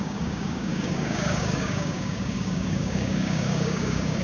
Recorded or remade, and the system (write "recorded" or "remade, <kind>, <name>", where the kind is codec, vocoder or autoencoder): remade, codec, DAC